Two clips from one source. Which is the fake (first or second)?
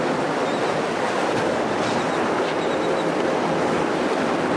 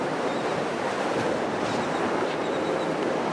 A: second